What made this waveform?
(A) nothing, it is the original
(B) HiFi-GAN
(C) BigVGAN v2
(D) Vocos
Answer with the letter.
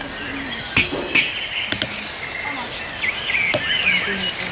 A